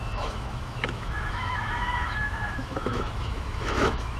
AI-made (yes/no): yes